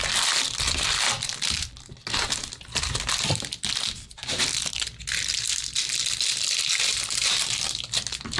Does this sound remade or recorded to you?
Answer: recorded